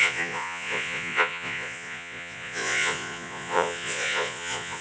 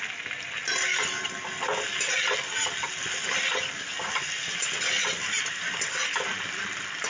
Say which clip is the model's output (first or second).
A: first